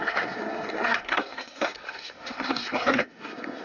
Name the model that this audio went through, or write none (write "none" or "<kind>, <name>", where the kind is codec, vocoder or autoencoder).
codec, SNAC